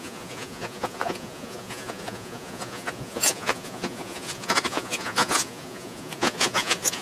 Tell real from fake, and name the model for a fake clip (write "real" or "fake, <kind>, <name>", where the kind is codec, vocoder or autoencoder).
fake, vocoder, Vocos